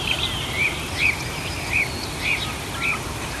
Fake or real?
real